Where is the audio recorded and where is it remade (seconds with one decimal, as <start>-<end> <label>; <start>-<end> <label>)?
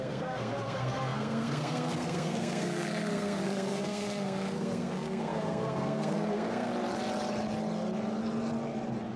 0.0-6.7 remade; 6.7-9.2 recorded